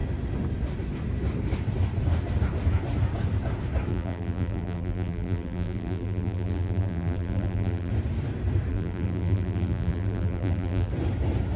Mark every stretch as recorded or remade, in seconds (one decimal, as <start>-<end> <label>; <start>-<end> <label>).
0.0-3.9 recorded; 3.9-7.9 remade; 7.9-8.7 recorded; 8.7-10.9 remade; 10.9-11.6 recorded

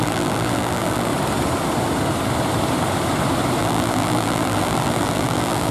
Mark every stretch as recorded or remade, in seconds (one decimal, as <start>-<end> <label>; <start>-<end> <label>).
0.0-1.1 remade; 1.1-3.6 recorded; 3.6-5.7 remade

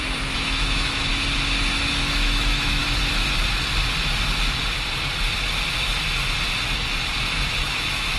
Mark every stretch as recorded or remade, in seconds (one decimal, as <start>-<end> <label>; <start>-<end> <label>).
0.0-1.1 remade; 1.1-1.9 recorded; 1.9-2.8 remade; 2.8-7.7 recorded; 7.7-8.2 remade

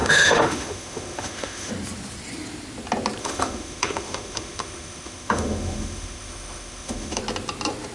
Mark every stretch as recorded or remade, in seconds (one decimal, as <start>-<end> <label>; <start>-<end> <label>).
0.0-1.7 remade; 1.7-3.2 recorded; 3.2-7.2 remade; 7.2-7.9 recorded

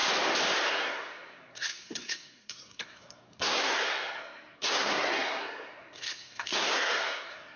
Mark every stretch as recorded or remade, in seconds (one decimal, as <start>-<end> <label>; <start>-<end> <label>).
0.0-0.7 recorded; 0.7-7.6 remade

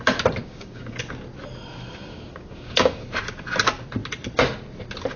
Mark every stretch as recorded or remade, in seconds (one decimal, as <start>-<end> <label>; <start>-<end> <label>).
0.0-0.4 recorded; 0.4-1.0 remade; 1.0-2.1 recorded; 2.1-3.0 remade; 3.0-5.2 recorded

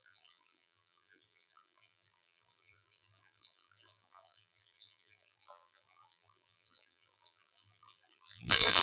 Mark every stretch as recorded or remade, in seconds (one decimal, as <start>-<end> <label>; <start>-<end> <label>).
0.0-8.8 remade